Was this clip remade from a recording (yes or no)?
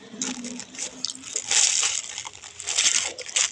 yes